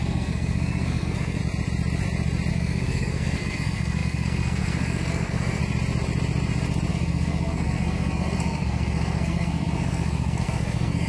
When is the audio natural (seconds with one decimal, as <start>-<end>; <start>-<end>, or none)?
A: 1.4-2.5; 5.6-6.9